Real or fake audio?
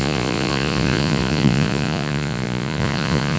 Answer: fake